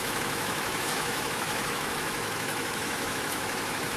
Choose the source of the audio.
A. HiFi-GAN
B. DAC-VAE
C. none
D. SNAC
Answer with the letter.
B